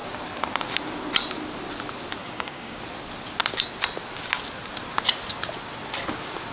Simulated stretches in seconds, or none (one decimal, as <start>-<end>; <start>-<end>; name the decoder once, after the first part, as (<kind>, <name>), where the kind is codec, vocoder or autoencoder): 2.2-2.8 (codec, DAC)